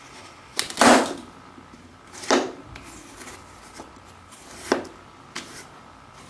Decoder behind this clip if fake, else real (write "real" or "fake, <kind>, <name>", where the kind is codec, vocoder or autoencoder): real